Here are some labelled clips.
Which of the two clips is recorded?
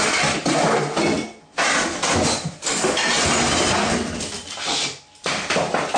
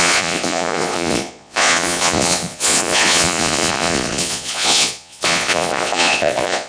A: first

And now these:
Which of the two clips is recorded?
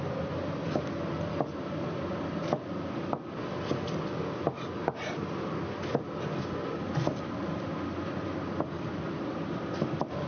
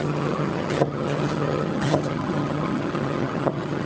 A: first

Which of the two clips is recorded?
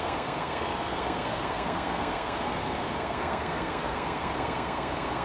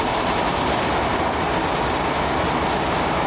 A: second